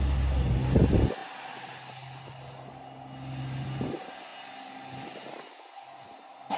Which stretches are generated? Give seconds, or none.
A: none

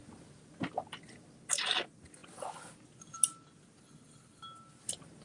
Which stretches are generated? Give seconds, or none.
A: none

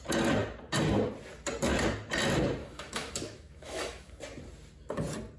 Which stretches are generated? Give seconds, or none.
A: 2.6-4.2 (autoencoder, DAC-VAE)

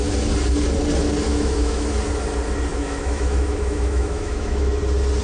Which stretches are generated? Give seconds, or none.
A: 1.3-1.9 (autoencoder, DAC-VAE); 2.7-4.8

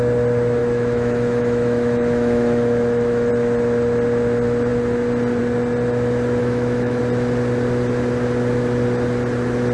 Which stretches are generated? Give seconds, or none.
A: 0.6-3.3 (autoencoder, DAC-VAE); 6.4-7.0